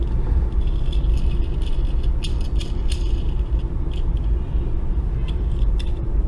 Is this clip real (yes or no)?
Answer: yes